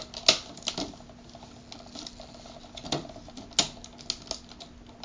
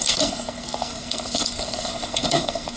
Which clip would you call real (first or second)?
first